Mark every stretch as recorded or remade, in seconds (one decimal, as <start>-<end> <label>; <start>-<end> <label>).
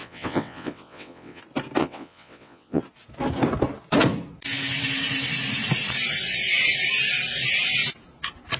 0.0-1.4 remade; 1.4-1.8 recorded; 1.8-2.8 remade; 2.8-8.6 recorded